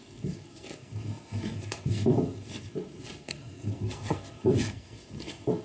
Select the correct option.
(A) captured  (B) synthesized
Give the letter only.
B